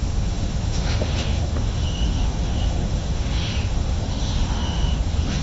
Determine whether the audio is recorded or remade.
remade